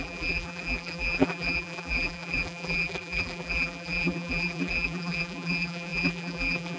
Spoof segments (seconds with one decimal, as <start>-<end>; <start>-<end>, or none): 0.0-6.8